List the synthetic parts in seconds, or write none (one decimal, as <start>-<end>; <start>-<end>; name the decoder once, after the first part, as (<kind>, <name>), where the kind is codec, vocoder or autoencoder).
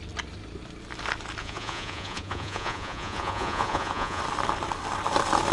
1.4-4.2 (vocoder, Vocos)